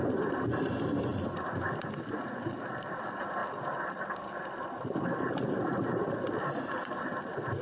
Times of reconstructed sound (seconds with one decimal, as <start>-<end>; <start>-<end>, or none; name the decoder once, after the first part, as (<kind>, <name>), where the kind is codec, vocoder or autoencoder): 0.0-1.1 (vocoder, BigVGAN v2); 2.1-3.4; 5.5-6.0; 6.6-7.6